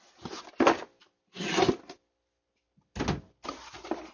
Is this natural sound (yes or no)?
yes